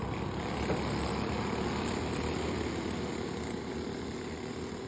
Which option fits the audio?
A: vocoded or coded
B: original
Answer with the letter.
B